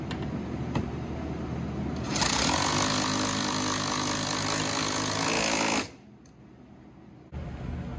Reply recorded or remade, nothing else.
recorded